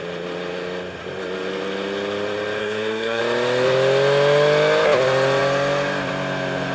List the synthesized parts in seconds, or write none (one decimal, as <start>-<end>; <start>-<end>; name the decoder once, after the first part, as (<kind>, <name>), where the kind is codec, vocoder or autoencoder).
2.6-3.2 (codec, SNAC)